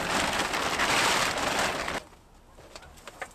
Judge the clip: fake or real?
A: real